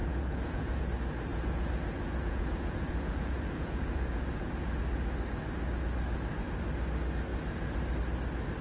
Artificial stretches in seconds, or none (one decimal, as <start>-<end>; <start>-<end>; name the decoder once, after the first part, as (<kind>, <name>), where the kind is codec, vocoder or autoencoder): 0.0-0.8 (vocoder, Vocos); 1.3-4.7